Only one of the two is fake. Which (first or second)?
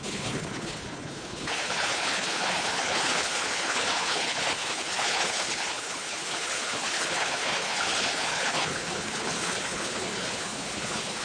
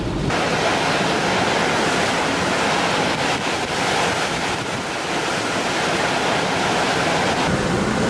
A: first